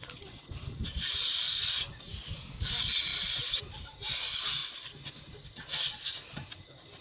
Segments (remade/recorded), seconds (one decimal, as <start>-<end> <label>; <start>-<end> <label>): 0.0-2.1 recorded; 2.1-2.7 remade; 2.7-7.0 recorded